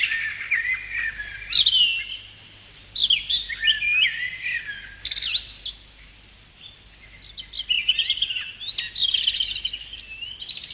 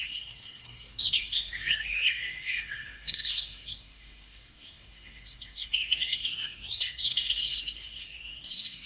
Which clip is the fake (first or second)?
second